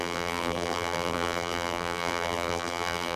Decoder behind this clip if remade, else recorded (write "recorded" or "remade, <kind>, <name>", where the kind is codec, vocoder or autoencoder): remade, vocoder, BigVGAN v2